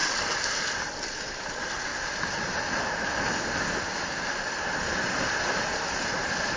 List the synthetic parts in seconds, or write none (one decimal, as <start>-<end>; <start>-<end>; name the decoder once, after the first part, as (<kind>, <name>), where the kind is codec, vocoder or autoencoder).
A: none